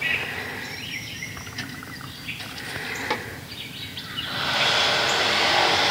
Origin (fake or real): real